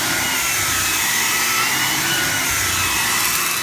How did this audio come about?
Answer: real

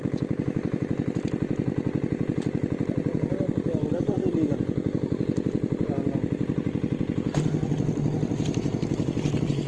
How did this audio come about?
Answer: real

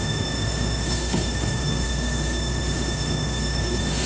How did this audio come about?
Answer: fake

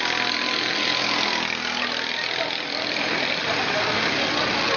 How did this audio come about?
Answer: real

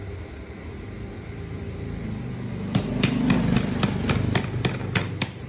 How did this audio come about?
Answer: real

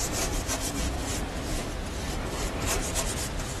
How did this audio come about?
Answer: real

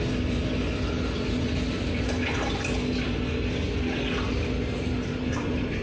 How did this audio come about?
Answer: real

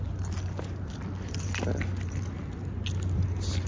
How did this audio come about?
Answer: real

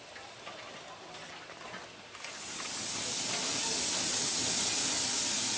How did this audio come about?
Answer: real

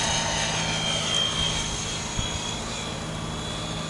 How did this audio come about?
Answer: real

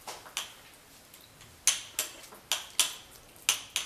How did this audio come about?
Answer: real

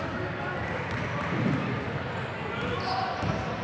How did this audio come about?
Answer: real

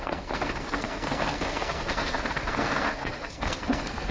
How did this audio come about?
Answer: fake